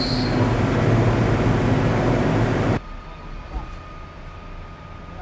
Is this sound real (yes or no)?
yes